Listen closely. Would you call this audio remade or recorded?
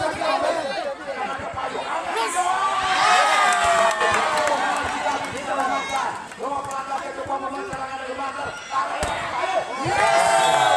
recorded